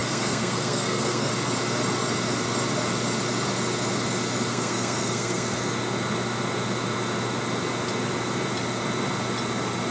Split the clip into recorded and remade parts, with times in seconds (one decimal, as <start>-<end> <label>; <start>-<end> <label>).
0.0-1.3 remade; 1.3-4.5 recorded; 4.5-5.6 remade; 5.6-9.9 recorded